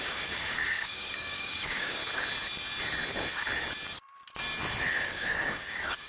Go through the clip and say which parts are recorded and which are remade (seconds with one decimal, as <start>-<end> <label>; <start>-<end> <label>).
0.0-2.0 remade; 2.0-4.9 recorded; 4.9-6.1 remade